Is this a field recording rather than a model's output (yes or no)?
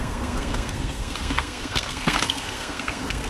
no